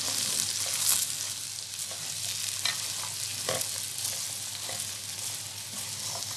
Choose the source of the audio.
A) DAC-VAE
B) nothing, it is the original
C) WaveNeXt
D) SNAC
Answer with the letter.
B